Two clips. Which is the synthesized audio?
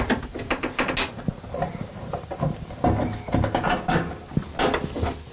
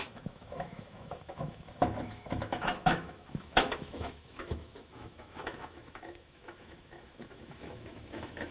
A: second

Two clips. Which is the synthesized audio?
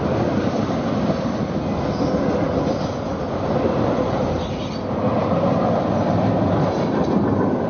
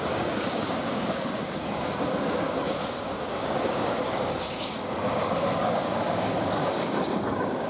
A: second